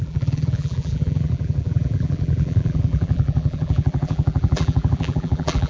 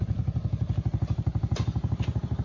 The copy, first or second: first